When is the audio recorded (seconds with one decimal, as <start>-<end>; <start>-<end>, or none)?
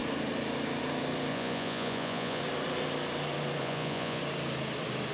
0.0-1.3; 2.4-3.6; 4.2-5.1